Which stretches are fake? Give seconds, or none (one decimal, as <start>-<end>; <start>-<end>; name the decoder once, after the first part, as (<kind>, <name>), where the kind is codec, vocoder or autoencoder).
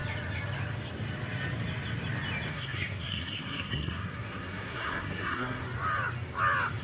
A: 2.5-5.6 (codec, SNAC)